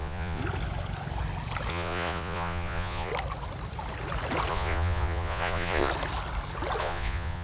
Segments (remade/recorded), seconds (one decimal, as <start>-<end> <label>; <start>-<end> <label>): 0.0-0.4 remade; 0.4-1.7 recorded; 1.7-3.1 remade; 3.1-4.5 recorded; 4.5-5.9 remade; 5.9-6.8 recorded; 6.8-7.4 remade